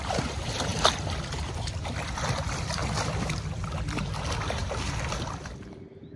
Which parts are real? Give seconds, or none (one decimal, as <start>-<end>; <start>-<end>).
2.8-4.0